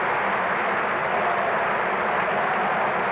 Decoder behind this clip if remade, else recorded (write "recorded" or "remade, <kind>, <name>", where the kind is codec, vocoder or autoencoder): recorded